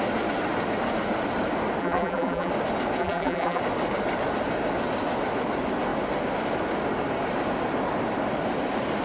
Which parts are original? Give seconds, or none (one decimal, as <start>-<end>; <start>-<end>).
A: 0.0-1.8; 2.5-3.0; 3.6-9.0